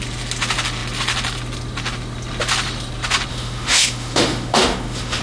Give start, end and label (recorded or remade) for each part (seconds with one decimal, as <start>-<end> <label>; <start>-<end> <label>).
0.0-3.3 recorded; 3.3-5.2 remade